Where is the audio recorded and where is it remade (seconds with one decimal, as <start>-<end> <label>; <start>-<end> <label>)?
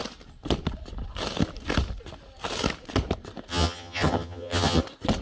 0.0-3.5 recorded; 3.5-4.8 remade; 4.8-5.2 recorded